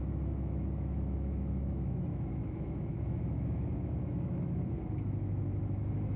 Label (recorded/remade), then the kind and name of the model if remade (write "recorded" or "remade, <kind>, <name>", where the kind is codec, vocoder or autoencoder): remade, autoencoder, DAC-VAE